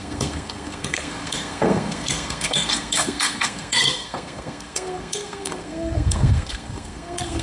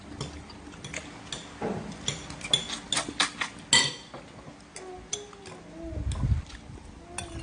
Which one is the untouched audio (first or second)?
second